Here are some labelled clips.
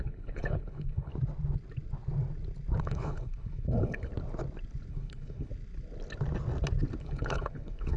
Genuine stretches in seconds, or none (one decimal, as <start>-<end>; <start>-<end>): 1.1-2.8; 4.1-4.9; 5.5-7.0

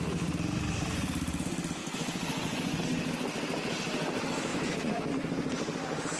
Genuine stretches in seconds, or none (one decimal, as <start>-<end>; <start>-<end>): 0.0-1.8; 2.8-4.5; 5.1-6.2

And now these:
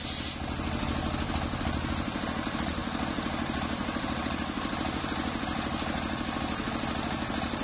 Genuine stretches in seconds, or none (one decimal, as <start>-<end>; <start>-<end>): 0.0-7.6

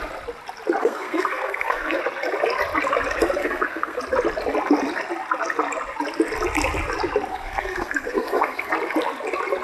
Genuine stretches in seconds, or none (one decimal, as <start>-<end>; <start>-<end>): 0.0-0.8; 2.0-3.4; 4.0-7.3; 8.7-9.6

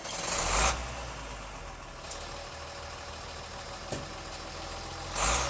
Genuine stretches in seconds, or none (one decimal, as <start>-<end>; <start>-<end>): 0.0-0.8; 1.6-5.5

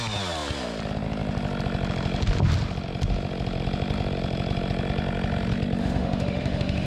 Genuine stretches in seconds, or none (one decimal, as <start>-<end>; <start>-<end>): 0.0-5.8

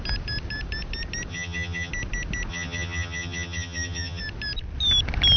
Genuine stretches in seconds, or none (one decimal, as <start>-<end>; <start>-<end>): 0.0-1.3; 1.9-2.5; 4.2-5.4

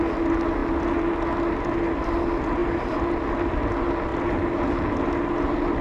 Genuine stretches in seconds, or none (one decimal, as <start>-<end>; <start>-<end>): 0.0-5.8